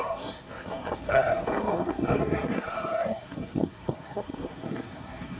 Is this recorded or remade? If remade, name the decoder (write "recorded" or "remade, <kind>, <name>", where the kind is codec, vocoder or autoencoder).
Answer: remade, codec, SNAC